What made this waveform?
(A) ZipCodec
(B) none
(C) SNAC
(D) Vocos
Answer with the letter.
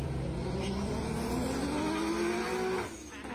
B